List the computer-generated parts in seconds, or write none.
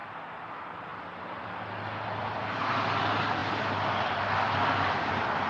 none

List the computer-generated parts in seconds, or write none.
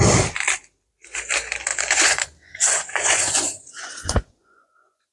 1.7-5.1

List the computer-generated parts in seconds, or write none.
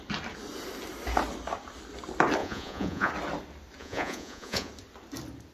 2.4-3.1; 3.8-4.7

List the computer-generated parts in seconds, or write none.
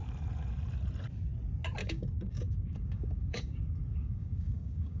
1.8-5.0